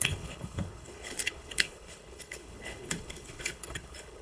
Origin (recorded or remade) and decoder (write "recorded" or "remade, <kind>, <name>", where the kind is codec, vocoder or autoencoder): remade, codec, HILCodec